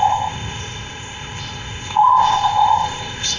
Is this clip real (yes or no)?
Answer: no